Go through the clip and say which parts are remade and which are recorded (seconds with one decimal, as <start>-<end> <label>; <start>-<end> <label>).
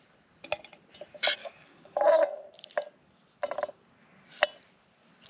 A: 0.0-1.4 recorded; 1.4-2.0 remade; 2.0-5.3 recorded